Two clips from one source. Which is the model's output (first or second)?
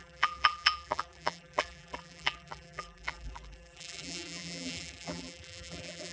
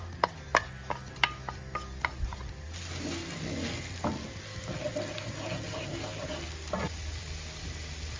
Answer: first